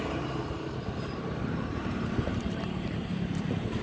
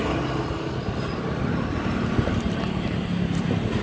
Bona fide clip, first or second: second